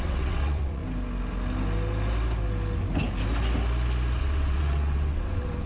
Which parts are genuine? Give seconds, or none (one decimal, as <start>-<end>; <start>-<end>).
0.8-4.2